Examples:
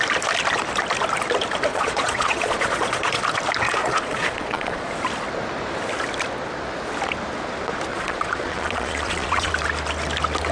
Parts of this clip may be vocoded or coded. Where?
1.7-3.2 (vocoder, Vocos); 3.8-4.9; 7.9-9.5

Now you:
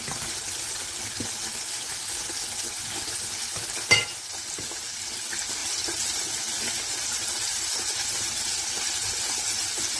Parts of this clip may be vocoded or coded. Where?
none

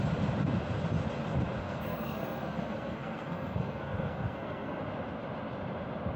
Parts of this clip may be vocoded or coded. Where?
1.6-4.8 (codec, SNAC)

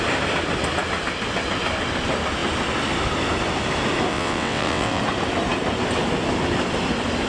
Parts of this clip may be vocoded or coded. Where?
4.1-5.0 (vocoder, WaveNeXt)

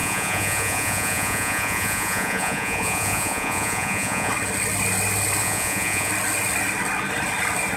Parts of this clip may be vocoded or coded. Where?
0.0-4.3 (vocoder, Vocos); 5.4-6.1

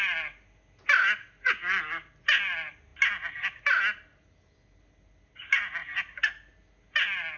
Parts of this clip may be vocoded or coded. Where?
none

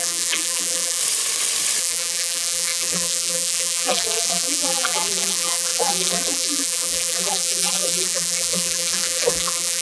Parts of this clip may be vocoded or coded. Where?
0.0-1.0 (vocoder, BigVGAN v2); 1.8-9.8